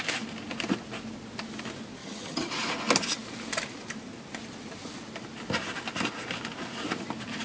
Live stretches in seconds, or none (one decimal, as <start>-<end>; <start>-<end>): 0.0-2.0; 2.5-7.4